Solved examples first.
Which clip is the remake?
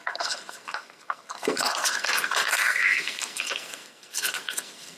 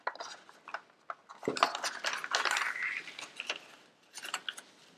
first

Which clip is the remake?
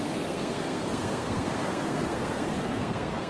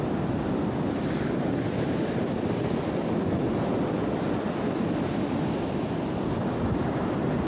first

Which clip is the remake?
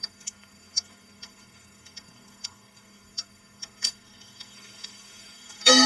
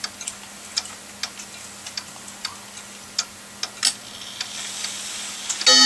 first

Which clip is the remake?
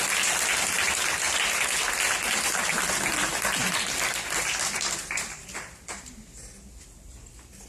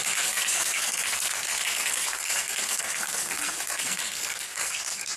second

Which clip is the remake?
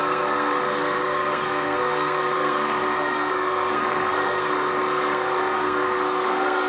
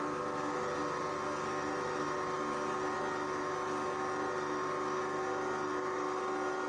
first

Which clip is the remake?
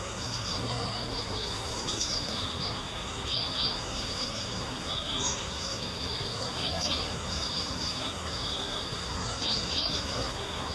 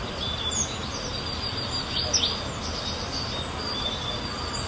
first